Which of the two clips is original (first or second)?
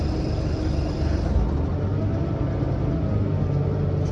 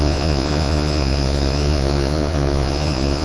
first